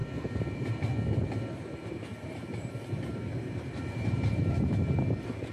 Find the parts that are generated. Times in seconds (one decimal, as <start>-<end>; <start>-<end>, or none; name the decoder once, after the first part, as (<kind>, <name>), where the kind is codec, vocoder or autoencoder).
2.1-5.5 (vocoder, BigVGAN v2)